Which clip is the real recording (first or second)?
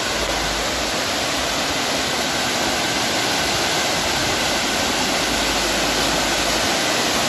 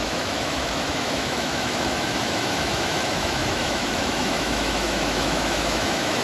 first